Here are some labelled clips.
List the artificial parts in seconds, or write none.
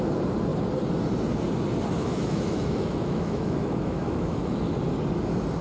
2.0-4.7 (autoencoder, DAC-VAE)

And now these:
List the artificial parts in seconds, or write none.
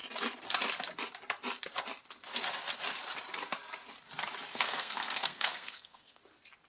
4.5-6.2 (codec, SNAC)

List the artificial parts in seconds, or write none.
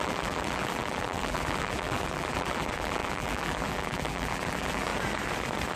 0.0-4.9 (vocoder, BigVGAN v2)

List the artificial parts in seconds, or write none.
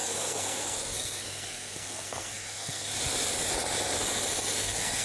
0.0-2.9 (codec, SNAC); 4.5-5.0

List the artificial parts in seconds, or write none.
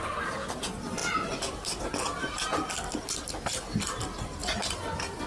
none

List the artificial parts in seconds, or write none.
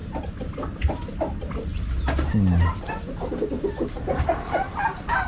none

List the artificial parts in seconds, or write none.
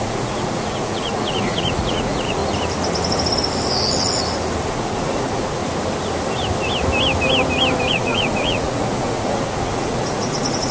0.0-2.4 (vocoder, Vocos); 4.7-5.6; 7.9-10.7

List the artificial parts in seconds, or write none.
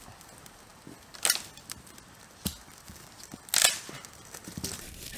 none